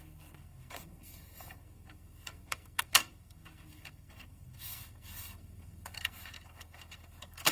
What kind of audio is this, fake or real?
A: fake